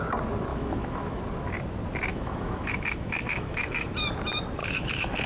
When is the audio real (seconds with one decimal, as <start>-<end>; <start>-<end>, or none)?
0.0-0.5; 1.2-2.1; 3.9-4.6